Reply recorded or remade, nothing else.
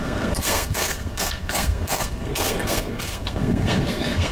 remade